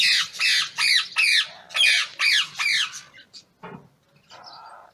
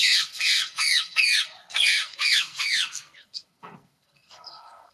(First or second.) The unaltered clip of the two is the first